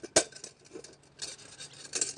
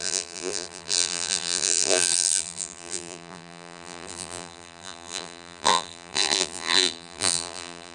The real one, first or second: first